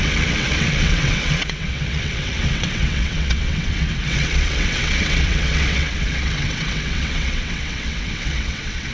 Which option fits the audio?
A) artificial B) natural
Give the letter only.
A